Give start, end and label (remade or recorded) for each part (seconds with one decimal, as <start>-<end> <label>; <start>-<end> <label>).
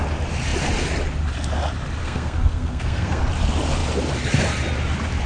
0.0-2.0 recorded; 2.0-3.2 remade; 3.2-5.3 recorded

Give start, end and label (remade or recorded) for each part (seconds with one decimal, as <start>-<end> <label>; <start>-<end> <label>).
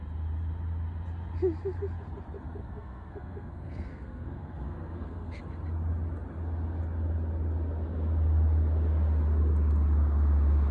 0.0-2.6 recorded; 2.6-5.4 remade; 5.4-10.7 recorded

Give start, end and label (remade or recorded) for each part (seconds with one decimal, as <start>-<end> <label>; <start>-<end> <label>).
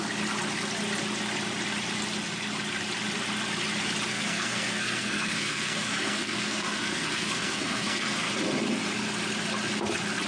0.0-4.1 recorded; 4.1-8.3 remade; 8.3-10.3 recorded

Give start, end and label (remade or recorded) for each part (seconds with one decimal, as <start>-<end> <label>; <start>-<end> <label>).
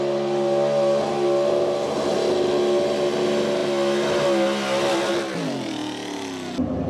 0.0-6.9 recorded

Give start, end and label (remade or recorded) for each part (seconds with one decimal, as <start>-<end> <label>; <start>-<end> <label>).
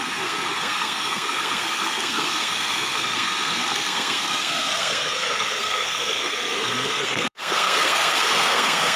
0.0-9.0 remade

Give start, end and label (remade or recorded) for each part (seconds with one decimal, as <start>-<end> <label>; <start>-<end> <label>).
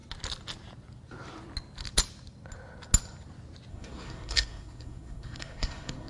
0.0-3.7 recorded; 3.7-6.1 remade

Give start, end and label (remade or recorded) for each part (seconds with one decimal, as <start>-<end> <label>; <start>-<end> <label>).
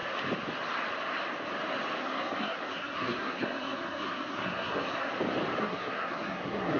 0.0-2.0 recorded; 2.0-5.1 remade; 5.1-5.6 recorded; 5.6-6.8 remade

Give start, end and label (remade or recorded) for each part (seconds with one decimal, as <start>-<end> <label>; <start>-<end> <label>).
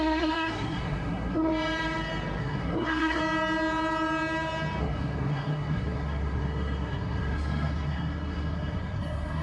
0.0-1.5 remade; 1.5-2.4 recorded; 2.4-3.2 remade; 3.2-4.8 recorded; 4.8-9.4 remade